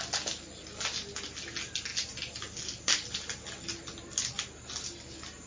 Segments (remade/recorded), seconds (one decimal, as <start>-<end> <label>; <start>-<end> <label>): 0.0-5.5 recorded